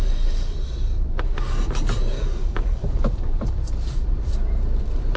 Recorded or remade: remade